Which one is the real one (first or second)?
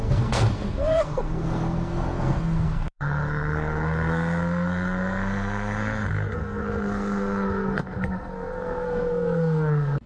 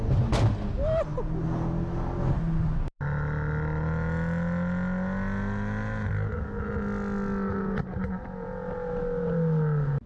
second